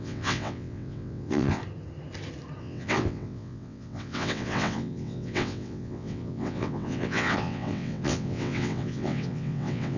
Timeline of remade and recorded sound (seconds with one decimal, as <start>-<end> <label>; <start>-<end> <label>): 0.0-1.6 remade; 1.6-2.6 recorded; 2.6-10.0 remade